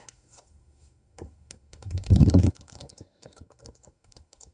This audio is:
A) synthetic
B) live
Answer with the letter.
A